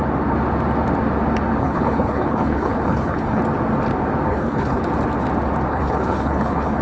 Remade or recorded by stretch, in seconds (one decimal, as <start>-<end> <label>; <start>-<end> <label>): 0.0-1.6 recorded; 1.6-3.4 remade; 3.4-4.3 recorded; 4.3-4.9 remade; 4.9-5.7 recorded; 5.7-6.8 remade